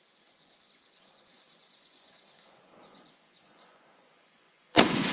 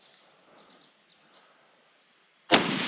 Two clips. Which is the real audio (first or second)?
second